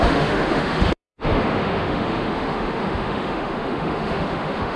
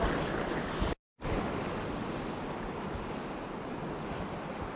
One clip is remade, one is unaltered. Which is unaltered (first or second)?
second